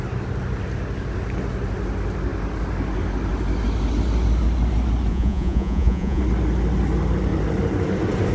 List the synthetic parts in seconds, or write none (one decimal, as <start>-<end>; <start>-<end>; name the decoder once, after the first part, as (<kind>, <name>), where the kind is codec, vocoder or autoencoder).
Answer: 5.1-6.2 (vocoder, Vocos)